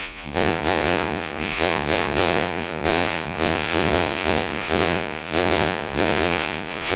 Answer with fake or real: fake